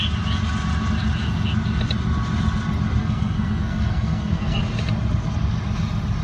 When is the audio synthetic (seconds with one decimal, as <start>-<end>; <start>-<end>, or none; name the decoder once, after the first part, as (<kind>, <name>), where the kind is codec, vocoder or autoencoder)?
3.0-4.6 (codec, SNAC)